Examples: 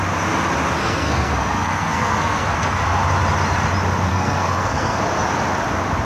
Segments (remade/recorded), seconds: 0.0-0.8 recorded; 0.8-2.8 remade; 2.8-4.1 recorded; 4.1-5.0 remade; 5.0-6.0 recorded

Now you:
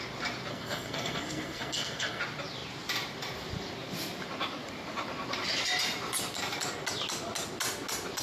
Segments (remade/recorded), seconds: 0.0-0.5 recorded; 0.5-2.2 remade; 2.2-8.2 recorded